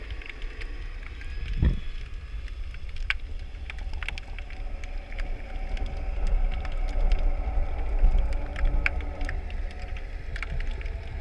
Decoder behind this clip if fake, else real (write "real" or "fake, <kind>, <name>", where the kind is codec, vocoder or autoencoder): real